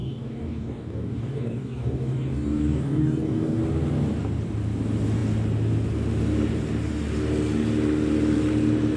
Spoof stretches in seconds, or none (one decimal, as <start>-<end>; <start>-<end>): 0.0-3.6